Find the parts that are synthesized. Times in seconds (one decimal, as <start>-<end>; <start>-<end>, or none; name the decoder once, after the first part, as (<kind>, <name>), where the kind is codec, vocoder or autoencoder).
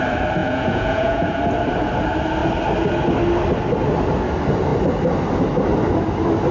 0.4-1.4 (vocoder, Vocos)